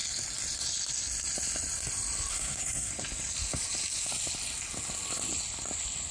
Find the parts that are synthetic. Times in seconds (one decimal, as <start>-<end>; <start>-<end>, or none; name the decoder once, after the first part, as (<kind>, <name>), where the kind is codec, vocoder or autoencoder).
2.3-2.9 (codec, SNAC)

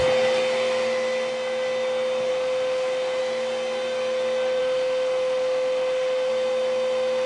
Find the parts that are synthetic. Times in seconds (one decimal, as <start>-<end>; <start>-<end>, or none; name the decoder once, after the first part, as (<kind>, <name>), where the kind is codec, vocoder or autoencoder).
2.3-3.2 (autoencoder, DAC-VAE); 4.6-6.3